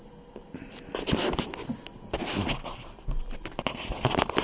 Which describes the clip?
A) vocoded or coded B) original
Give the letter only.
B